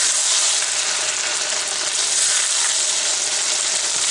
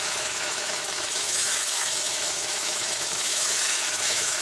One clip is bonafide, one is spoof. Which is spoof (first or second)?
second